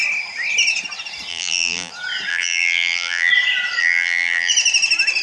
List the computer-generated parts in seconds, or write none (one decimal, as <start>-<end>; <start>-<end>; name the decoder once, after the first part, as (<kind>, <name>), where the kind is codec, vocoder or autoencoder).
1.3-1.9 (vocoder, BigVGAN v2); 2.3-3.3; 3.8-4.5